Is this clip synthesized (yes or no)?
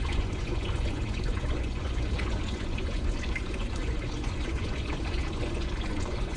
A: yes